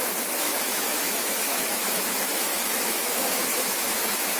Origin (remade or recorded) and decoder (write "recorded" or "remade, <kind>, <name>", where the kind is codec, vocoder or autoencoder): remade, autoencoder, DAC-VAE